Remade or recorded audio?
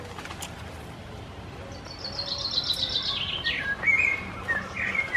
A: recorded